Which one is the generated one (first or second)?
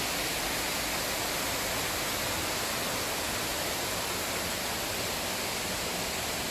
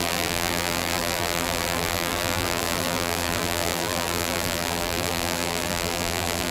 second